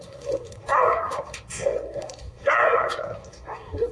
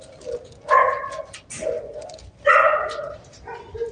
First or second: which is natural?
second